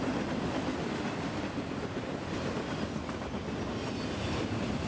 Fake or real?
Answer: real